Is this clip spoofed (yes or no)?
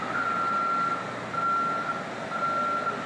no